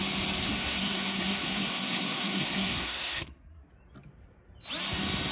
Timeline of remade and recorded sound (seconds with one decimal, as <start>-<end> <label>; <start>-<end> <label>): 0.0-0.5 recorded; 0.5-3.7 remade; 3.7-5.3 recorded